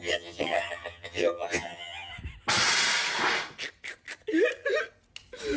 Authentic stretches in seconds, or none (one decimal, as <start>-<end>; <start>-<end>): 2.1-5.6